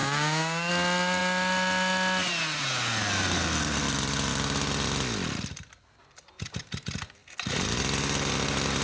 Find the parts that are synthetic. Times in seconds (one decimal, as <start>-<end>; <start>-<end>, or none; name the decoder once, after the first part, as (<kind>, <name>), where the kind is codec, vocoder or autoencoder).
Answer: 0.0-0.7 (codec, DAC)